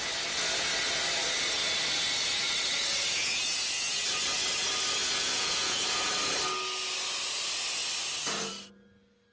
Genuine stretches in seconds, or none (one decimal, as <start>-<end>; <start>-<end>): 0.0-5.0; 6.1-9.3